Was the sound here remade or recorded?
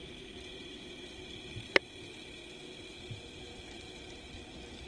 recorded